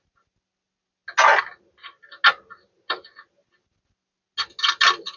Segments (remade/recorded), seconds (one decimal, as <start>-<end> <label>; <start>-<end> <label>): 0.0-5.2 recorded